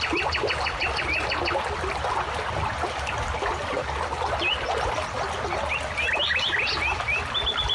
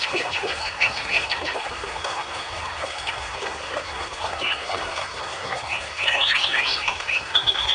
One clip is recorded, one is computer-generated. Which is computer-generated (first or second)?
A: second